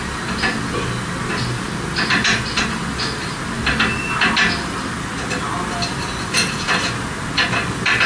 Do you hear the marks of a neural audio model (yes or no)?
no